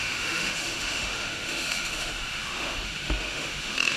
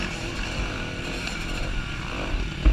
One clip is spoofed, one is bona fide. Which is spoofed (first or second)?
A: first